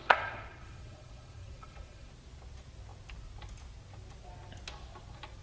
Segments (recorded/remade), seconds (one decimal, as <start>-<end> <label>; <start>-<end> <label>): 0.0-2.1 remade; 2.1-5.4 recorded